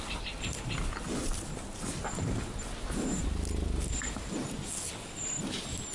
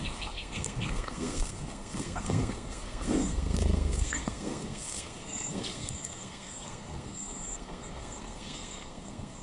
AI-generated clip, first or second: second